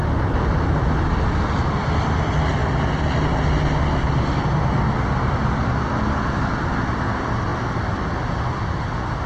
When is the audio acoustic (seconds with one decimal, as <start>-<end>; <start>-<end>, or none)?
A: 0.6-9.3